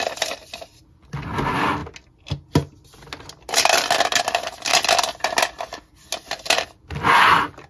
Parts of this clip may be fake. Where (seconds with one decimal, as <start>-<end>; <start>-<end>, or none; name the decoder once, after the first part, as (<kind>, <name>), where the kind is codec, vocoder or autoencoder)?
none